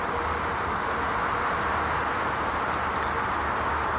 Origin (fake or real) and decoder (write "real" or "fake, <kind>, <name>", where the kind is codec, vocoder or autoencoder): real